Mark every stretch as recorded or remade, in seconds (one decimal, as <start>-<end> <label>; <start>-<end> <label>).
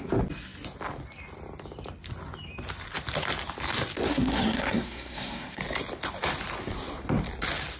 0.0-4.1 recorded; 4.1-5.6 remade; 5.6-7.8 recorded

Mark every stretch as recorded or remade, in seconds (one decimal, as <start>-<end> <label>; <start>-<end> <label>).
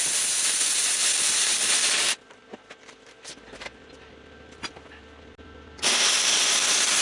0.0-7.0 recorded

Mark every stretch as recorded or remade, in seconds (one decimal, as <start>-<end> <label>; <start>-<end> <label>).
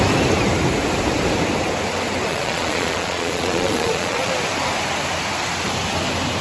0.0-2.3 recorded; 2.3-4.3 remade; 4.3-6.4 recorded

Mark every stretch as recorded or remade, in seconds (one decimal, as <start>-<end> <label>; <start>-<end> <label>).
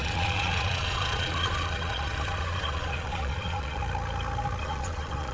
0.0-3.8 remade; 3.8-4.6 recorded; 4.6-5.3 remade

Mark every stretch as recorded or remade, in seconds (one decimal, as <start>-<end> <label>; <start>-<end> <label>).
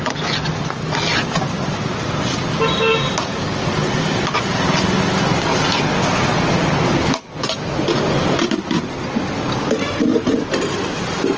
0.0-11.4 recorded